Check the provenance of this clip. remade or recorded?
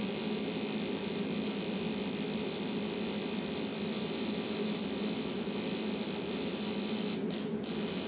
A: recorded